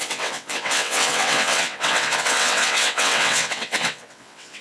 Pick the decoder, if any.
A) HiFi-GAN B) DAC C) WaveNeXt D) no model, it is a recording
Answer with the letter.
C